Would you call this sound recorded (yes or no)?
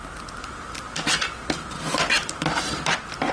yes